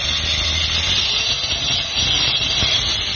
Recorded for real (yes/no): yes